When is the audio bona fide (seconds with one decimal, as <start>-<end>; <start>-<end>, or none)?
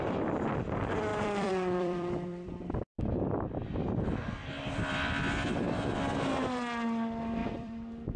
0.0-1.1; 3.0-4.4; 5.0-7.4